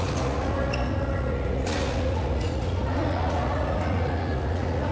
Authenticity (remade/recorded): remade